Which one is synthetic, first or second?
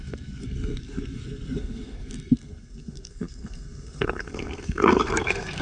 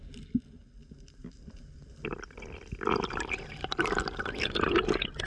first